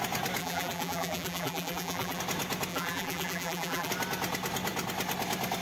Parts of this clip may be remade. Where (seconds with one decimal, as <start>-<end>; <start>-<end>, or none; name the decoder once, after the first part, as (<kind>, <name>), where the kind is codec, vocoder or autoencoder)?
0.4-2.2 (vocoder, BigVGAN v2); 2.7-3.9